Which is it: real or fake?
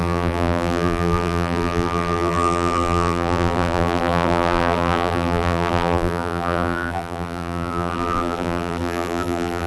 fake